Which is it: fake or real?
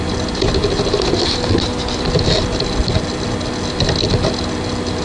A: real